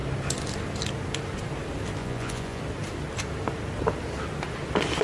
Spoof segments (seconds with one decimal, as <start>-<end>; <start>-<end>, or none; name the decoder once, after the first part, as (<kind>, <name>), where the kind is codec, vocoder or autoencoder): 2.0-2.6 (vocoder, Vocos)